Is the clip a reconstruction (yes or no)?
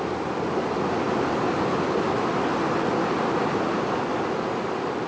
no